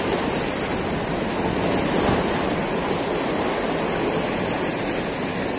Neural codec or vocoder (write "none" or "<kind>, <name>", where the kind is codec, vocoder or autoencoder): none